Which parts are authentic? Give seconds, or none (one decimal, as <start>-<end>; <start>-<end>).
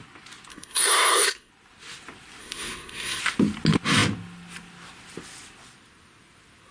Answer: 0.0-0.5; 1.5-2.4; 3.2-6.7